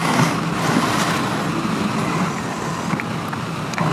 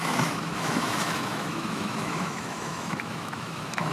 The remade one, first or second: second